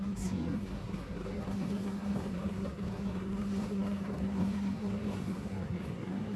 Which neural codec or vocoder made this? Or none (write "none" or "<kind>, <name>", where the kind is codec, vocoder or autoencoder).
codec, SNAC